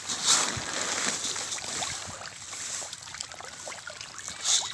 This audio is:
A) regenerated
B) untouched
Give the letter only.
B